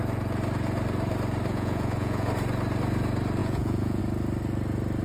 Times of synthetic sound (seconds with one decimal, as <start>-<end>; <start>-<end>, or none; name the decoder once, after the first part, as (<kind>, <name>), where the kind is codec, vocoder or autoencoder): 1.5-2.3 (vocoder, Vocos); 3.4-4.0